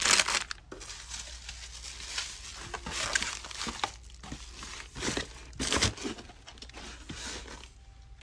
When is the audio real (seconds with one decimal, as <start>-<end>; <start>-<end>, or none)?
0.0-8.2